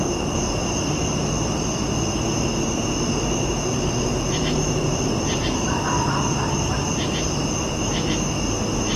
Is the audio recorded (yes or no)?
yes